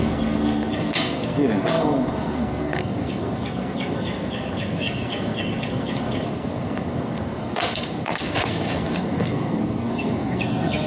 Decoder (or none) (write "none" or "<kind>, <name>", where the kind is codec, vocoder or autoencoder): codec, SNAC